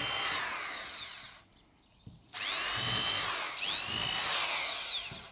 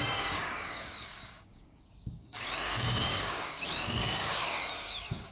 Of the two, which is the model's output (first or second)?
second